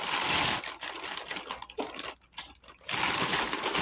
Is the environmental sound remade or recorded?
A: recorded